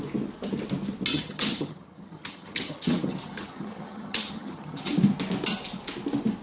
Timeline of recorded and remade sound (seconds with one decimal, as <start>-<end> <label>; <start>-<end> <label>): 0.0-1.1 recorded; 1.1-4.9 remade; 4.9-6.4 recorded